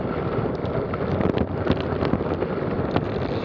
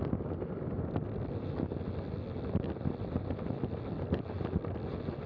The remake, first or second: first